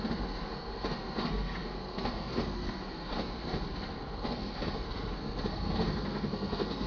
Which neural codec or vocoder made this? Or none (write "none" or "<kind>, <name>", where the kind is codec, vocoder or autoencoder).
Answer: codec, SNAC